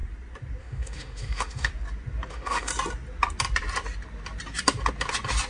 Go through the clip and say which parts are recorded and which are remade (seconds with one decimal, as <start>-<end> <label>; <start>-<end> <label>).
0.0-0.6 recorded; 0.6-1.7 remade; 1.7-2.3 recorded; 2.3-2.7 remade; 2.7-5.5 recorded